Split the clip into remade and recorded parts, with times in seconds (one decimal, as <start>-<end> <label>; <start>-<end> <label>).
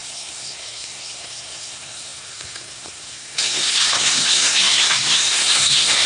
0.0-6.1 remade